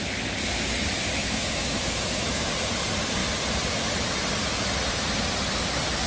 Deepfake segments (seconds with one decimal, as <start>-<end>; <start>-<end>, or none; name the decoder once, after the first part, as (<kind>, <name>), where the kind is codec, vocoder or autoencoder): 1.2-2.5 (autoencoder, DAC-VAE)